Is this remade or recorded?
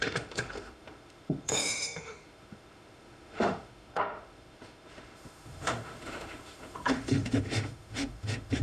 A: remade